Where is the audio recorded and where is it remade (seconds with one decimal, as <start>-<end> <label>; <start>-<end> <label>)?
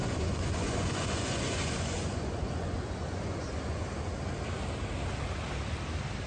0.0-3.8 remade; 3.8-6.3 recorded